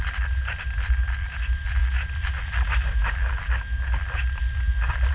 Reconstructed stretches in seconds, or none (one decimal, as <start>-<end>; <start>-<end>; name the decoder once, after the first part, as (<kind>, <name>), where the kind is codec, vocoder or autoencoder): none